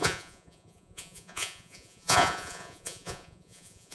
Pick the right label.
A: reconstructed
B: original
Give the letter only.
A